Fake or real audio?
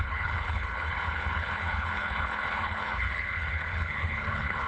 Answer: fake